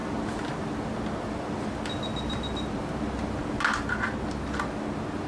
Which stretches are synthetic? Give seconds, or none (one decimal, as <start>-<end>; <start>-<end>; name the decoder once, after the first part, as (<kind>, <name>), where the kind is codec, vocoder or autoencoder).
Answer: none